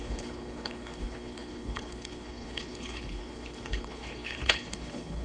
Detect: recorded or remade remade